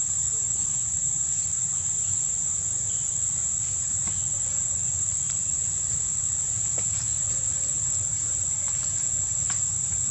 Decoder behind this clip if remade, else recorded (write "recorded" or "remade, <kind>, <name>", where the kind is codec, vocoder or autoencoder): recorded